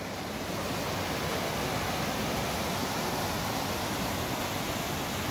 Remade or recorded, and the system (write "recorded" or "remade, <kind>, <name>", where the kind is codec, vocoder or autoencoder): recorded